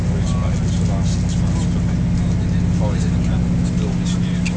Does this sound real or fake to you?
real